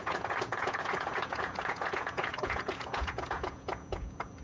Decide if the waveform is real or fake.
fake